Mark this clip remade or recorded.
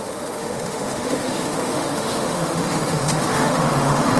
remade